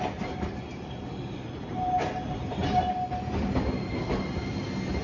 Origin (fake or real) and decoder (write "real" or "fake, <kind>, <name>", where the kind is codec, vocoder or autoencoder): real